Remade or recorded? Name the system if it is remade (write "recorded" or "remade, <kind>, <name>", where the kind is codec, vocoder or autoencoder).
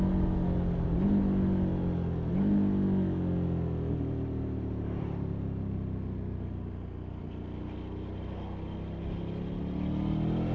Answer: recorded